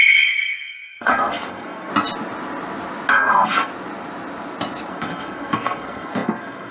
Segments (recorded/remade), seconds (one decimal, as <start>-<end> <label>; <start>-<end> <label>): 0.0-1.9 remade; 1.9-3.1 recorded; 3.1-3.7 remade; 3.7-4.9 recorded; 4.9-6.7 remade